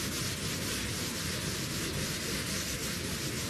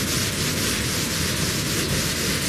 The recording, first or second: first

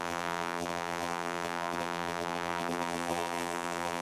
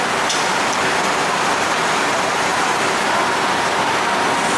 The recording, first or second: second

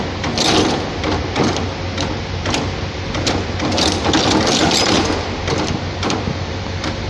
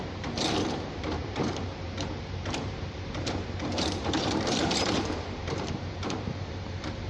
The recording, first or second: first